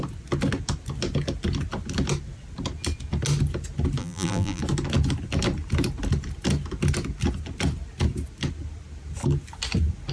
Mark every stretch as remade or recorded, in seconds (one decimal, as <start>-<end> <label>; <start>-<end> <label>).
0.0-4.0 recorded; 4.0-4.6 remade; 4.6-10.1 recorded